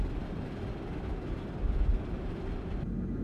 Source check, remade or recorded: recorded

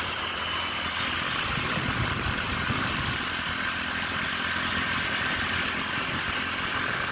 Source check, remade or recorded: recorded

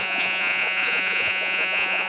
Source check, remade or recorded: remade